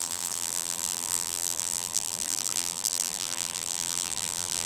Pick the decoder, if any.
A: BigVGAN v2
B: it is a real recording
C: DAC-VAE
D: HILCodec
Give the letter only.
A